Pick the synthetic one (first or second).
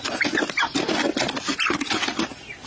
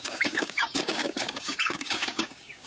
second